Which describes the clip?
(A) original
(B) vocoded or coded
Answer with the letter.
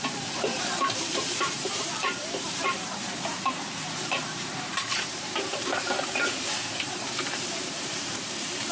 B